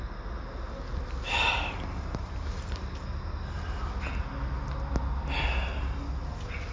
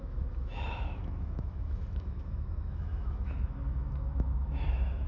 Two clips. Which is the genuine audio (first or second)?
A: first